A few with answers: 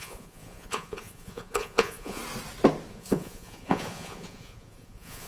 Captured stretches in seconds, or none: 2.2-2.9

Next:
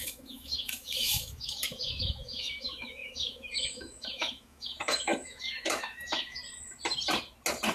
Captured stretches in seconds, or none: 6.4-7.7

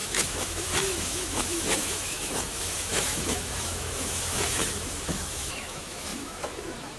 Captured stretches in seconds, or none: none

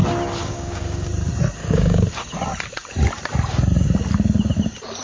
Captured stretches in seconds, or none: 0.0-0.4; 1.1-1.6; 2.1-5.0